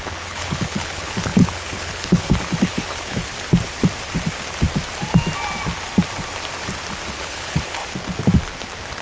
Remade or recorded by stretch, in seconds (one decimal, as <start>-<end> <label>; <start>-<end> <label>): 0.0-3.3 remade; 3.3-7.1 recorded; 7.1-7.8 remade; 7.8-9.0 recorded